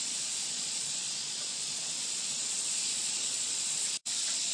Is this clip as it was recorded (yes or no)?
no